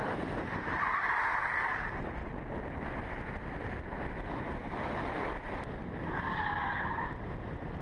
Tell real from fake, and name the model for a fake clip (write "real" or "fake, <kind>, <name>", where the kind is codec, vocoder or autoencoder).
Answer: real